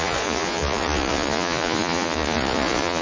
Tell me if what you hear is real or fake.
fake